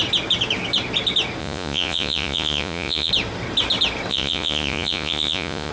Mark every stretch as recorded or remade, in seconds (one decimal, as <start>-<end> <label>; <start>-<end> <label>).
0.0-1.4 recorded; 1.4-3.1 remade; 3.1-4.1 recorded; 4.1-5.7 remade

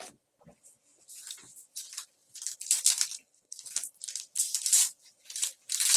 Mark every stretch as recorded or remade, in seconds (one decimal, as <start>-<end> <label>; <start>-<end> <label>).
0.0-3.2 recorded; 3.2-3.8 remade; 3.8-6.0 recorded

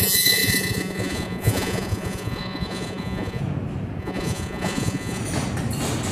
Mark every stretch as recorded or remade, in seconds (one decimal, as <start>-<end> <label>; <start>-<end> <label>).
0.0-3.4 remade; 3.4-4.0 recorded; 4.0-5.2 remade; 5.2-6.1 recorded